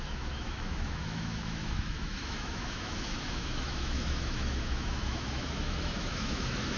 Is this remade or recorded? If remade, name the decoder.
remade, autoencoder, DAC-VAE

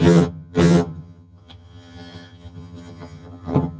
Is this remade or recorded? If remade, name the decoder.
remade, vocoder, HiFi-GAN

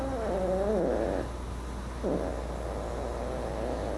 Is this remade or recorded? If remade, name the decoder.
recorded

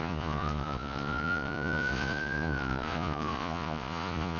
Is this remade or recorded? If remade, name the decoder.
remade, vocoder, Vocos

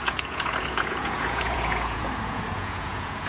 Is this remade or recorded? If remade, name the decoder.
remade, vocoder, Vocos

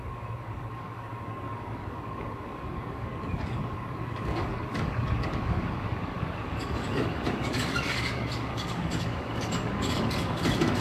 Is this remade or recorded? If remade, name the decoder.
remade, codec, DAC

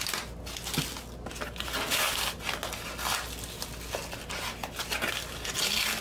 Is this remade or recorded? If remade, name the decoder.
recorded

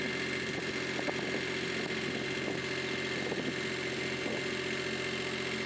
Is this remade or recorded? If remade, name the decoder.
recorded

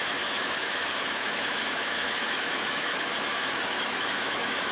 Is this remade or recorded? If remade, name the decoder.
remade, autoencoder, DAC-VAE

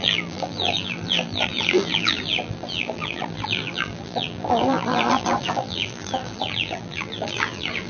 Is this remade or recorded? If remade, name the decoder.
remade, vocoder, BigVGAN v2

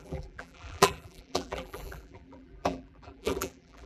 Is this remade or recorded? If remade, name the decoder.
remade, vocoder, BigVGAN v2